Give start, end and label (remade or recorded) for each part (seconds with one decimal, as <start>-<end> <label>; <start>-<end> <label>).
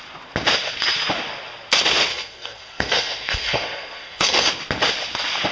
0.0-2.1 recorded; 2.1-4.5 remade; 4.5-5.5 recorded